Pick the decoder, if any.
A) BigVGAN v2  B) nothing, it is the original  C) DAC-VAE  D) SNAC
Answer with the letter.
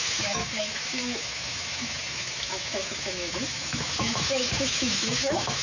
C